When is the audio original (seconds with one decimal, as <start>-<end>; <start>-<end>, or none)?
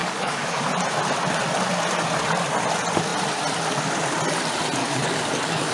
0.6-4.8